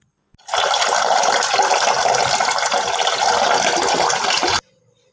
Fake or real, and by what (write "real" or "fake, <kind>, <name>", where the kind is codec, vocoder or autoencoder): real